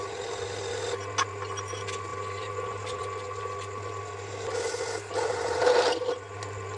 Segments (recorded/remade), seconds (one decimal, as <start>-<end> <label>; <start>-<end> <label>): 0.0-6.8 recorded